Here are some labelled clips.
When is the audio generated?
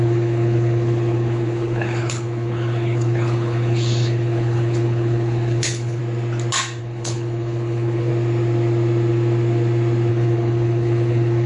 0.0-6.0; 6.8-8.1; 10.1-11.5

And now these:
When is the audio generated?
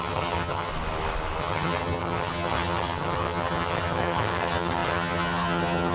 0.0-0.7; 1.4-5.9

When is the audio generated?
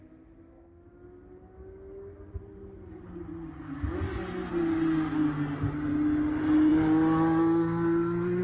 none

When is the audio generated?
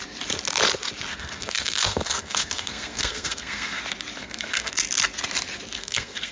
1.1-3.8; 4.2-4.7; 5.8-6.3